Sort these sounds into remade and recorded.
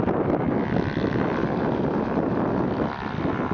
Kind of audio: recorded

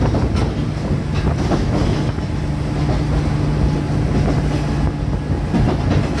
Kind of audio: recorded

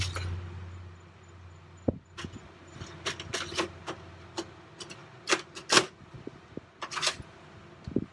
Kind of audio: recorded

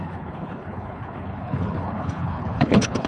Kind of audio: remade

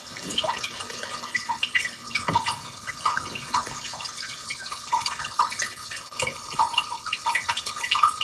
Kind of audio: remade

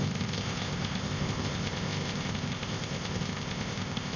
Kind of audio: remade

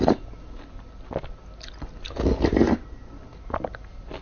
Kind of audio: recorded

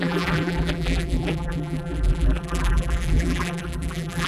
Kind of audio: remade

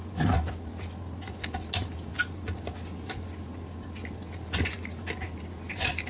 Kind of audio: recorded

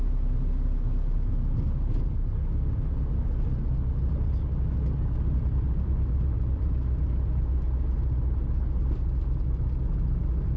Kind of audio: recorded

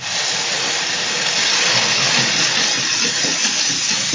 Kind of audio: recorded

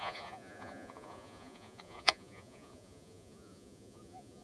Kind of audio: remade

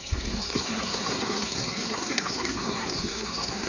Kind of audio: remade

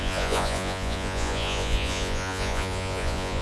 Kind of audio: remade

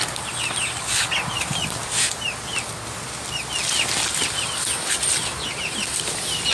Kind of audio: recorded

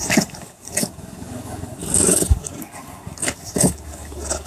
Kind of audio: remade